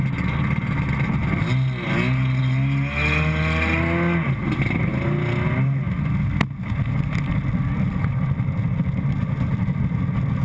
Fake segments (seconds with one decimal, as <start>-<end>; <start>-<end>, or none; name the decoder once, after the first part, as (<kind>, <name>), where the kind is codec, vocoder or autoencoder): none